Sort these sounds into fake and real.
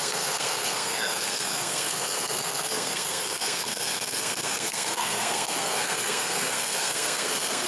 fake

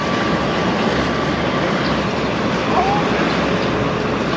real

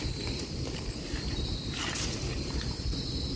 real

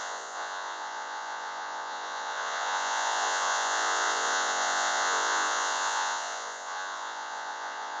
fake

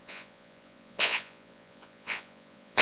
fake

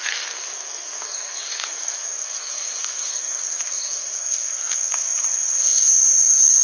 fake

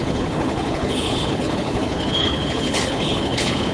fake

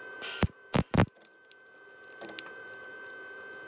fake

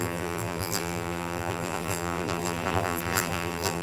fake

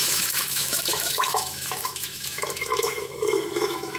fake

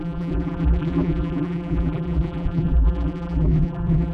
fake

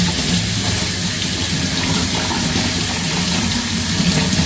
real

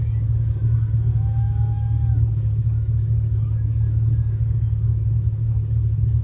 fake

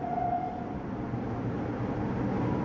real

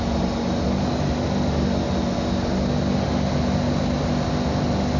real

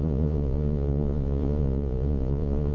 fake